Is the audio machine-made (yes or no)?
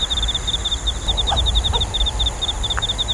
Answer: no